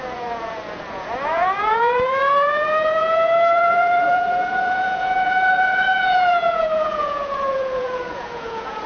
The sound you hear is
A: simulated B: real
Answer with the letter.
A